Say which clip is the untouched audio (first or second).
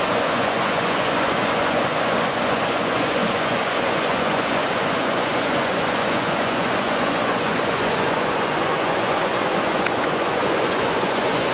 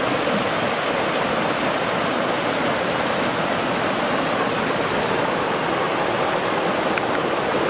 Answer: second